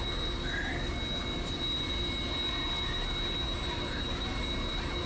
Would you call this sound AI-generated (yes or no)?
no